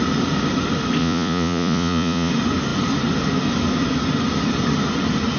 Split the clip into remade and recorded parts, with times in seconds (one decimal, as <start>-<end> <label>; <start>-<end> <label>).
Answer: 0.0-1.0 recorded; 1.0-2.3 remade; 2.3-5.4 recorded